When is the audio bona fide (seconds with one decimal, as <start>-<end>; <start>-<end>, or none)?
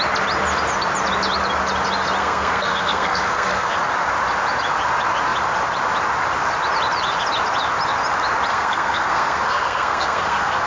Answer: 0.0-2.2; 3.8-8.5